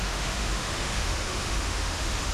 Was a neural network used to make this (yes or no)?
yes